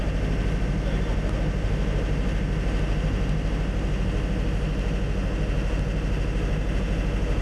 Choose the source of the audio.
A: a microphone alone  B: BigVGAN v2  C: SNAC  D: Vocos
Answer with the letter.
A